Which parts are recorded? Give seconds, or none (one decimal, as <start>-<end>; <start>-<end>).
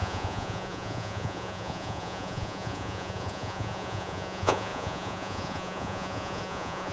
none